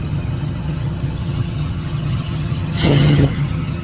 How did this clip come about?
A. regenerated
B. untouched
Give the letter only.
A